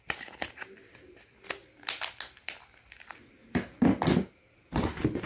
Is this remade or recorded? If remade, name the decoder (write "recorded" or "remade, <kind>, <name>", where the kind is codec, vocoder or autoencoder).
recorded